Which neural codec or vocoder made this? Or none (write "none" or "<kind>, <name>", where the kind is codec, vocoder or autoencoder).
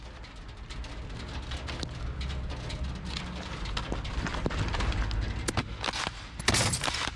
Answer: none